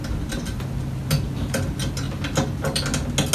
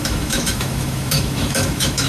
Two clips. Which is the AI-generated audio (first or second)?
second